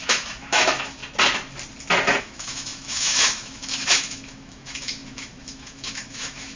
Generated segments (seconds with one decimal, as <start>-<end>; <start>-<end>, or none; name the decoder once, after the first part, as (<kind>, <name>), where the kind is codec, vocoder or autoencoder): 0.0-1.0 (autoencoder, DAC-VAE); 2.2-6.6